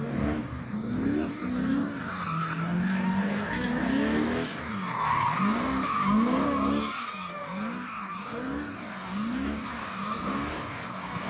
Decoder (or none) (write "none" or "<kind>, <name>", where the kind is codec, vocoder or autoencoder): codec, DAC